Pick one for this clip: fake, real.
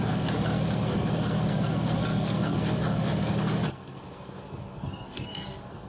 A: fake